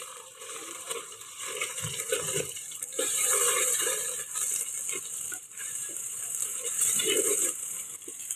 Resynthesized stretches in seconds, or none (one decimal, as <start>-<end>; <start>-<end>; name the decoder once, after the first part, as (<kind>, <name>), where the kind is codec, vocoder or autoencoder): 0.0-4.0 (vocoder, BigVGAN v2); 5.3-8.4